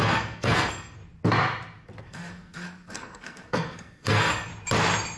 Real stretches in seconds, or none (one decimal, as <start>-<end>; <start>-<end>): 1.0-2.0; 4.5-5.2

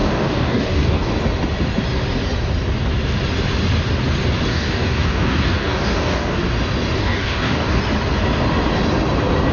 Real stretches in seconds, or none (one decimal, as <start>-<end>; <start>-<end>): 1.1-4.5; 6.4-7.0; 7.8-9.5

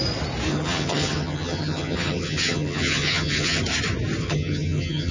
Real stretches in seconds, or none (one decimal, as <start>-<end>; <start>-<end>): 0.0-0.5; 3.6-4.2

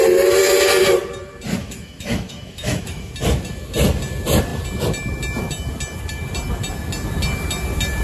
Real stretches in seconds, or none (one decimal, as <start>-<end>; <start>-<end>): 0.0-1.6; 3.1-8.0

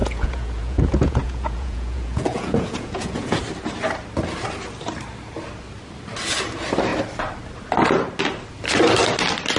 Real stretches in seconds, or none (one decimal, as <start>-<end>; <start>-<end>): 3.4-9.6